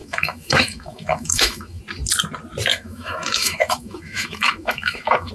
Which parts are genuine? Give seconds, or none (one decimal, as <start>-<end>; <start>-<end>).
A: 1.8-2.7